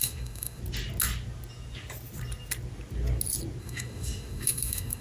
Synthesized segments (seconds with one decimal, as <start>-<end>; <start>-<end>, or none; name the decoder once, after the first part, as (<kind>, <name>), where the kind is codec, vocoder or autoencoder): 0.0-0.6 (autoencoder, DAC-VAE); 3.6-5.0